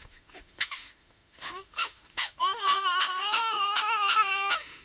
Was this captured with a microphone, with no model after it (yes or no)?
no